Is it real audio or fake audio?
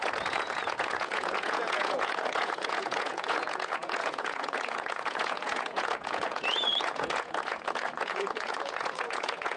fake